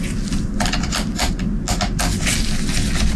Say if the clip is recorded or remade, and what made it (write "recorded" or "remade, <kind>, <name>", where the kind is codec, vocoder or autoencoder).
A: recorded